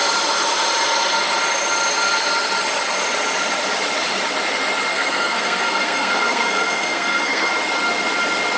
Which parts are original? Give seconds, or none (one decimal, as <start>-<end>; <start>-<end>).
0.0-4.9; 7.5-8.6